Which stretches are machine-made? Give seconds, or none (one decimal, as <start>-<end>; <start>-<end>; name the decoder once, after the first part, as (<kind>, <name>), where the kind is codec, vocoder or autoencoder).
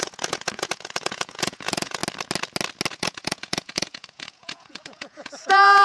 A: 0.0-2.0 (vocoder, Vocos); 2.9-5.8